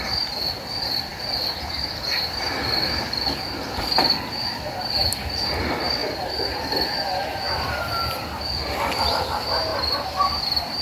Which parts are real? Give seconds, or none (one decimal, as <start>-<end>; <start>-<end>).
0.0-7.3; 7.8-9.7